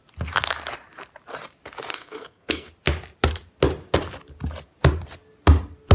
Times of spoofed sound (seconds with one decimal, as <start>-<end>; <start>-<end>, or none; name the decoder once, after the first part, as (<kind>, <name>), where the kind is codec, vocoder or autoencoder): 1.9-2.7 (codec, SNAC)